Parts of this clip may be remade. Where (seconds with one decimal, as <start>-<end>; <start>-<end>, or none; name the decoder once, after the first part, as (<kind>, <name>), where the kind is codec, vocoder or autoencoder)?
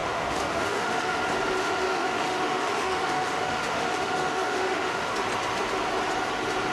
0.0-1.2 (autoencoder, DAC-VAE); 1.6-5.1